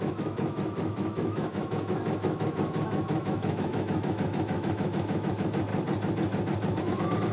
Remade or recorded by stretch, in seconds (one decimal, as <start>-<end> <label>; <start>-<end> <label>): 0.0-5.7 remade; 5.7-6.8 recorded; 6.8-7.3 remade